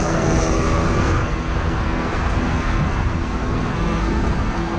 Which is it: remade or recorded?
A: remade